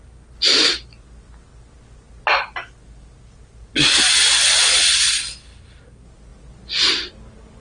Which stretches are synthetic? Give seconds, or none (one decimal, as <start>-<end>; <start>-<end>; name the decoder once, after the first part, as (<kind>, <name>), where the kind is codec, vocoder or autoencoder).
none